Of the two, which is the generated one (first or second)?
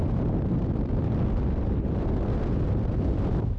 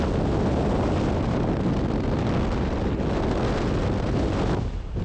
first